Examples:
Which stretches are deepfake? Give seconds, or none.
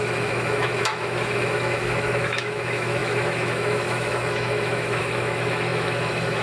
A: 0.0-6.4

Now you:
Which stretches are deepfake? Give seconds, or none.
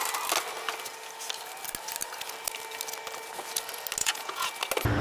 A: 4.0-4.5